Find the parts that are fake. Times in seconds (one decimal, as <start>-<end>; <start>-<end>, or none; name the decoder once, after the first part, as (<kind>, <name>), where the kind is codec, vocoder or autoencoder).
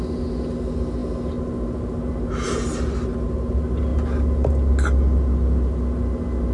none